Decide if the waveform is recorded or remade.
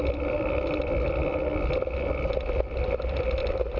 recorded